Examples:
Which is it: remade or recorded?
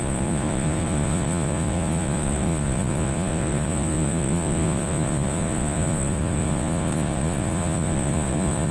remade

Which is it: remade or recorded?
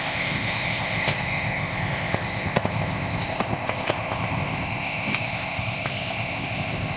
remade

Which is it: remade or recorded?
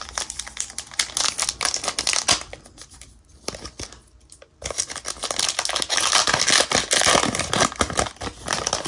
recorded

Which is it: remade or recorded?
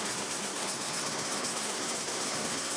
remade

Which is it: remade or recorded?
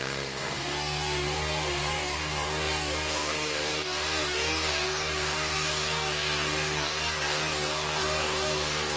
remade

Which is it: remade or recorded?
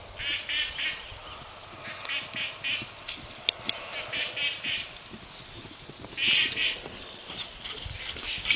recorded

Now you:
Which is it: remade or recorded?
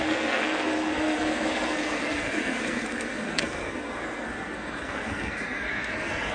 remade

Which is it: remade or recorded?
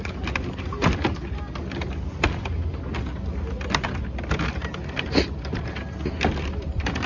recorded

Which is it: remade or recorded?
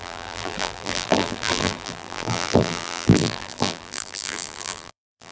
remade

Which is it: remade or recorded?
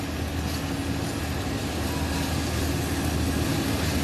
recorded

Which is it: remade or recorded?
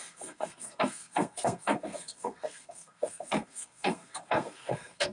remade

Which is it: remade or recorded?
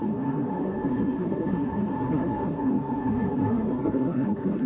remade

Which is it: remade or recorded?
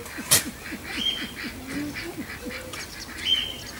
recorded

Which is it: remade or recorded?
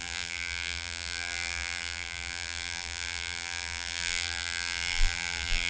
remade